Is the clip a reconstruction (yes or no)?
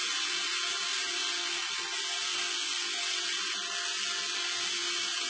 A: no